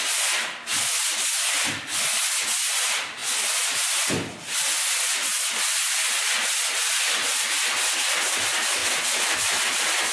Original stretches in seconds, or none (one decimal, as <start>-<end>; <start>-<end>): 0.0-10.1